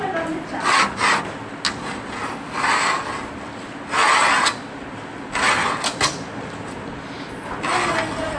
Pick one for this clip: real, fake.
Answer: real